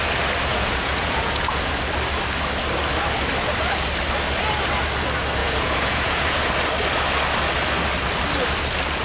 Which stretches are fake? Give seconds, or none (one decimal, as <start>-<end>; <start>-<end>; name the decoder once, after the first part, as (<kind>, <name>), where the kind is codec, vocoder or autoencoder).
0.5-1.7 (vocoder, Vocos); 5.4-6.5